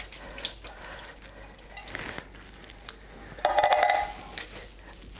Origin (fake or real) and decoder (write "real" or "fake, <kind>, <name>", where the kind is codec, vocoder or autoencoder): real